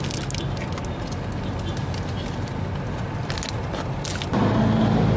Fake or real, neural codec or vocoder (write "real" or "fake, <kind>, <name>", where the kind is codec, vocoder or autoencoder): real